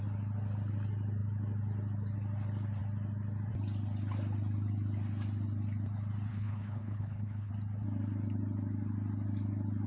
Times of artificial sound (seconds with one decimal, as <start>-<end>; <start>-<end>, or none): 6.3-7.5